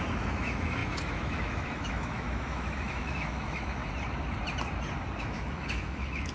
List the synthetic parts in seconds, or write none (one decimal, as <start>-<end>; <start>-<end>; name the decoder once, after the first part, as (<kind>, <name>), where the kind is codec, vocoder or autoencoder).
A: 0.0-3.8 (autoencoder, DAC-VAE); 5.2-6.3